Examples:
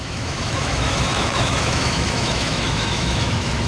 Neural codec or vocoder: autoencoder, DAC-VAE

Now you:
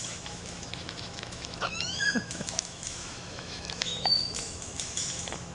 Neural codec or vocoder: autoencoder, DAC-VAE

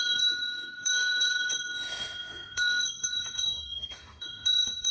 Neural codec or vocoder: autoencoder, DAC-VAE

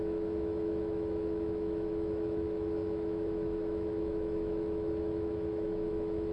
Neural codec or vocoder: autoencoder, DAC-VAE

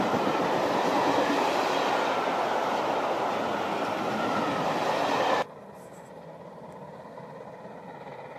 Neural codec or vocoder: none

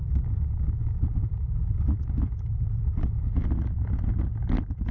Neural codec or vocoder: none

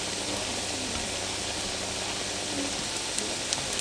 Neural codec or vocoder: none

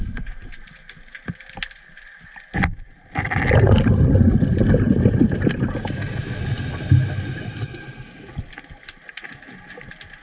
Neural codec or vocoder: none